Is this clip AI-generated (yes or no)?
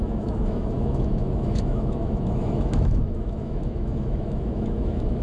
yes